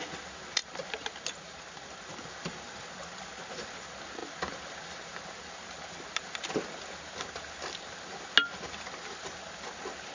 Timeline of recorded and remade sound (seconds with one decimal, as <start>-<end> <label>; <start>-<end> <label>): 0.0-10.1 recorded